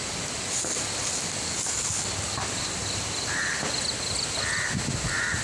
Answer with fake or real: real